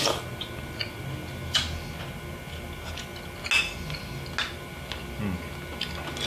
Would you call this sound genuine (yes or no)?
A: yes